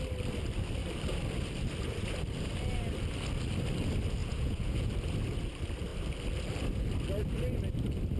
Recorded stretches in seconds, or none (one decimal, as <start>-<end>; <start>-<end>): 0.0-4.2; 4.9-8.2